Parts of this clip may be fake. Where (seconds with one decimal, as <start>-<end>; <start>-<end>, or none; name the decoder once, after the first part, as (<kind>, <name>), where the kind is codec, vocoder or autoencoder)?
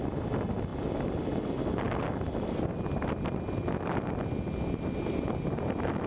none